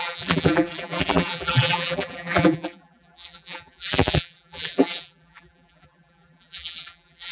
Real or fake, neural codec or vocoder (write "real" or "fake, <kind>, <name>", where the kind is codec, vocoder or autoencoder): fake, vocoder, BigVGAN v2